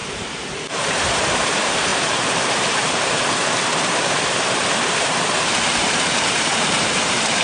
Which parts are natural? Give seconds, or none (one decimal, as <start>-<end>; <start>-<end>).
none